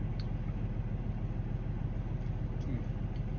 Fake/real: real